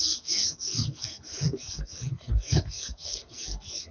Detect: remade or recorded remade